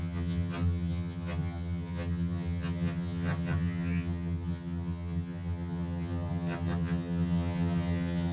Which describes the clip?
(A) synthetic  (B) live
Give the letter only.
A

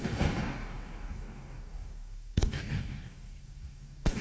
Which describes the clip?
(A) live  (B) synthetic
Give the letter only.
B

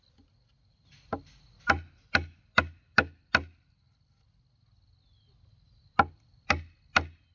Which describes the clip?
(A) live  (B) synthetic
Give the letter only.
A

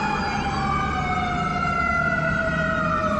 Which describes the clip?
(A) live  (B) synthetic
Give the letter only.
A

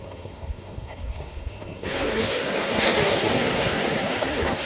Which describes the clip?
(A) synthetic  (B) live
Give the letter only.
A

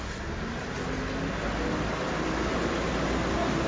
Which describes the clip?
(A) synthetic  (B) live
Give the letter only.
B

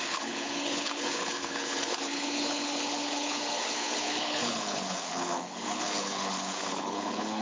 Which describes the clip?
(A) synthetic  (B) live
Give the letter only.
A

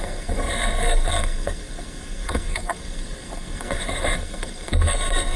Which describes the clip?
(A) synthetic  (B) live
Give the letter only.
A